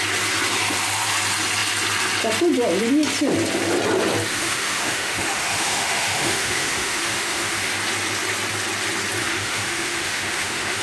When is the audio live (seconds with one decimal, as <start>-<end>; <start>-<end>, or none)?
0.0-4.3; 7.7-9.2